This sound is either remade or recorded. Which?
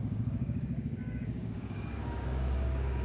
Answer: remade